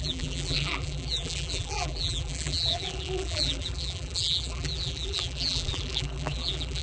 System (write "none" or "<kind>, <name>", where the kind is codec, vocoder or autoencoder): vocoder, BigVGAN v2